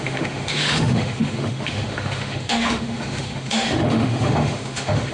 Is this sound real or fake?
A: fake